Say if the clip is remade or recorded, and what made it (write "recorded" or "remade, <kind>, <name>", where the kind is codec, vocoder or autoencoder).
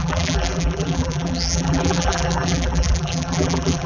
remade, vocoder, BigVGAN v2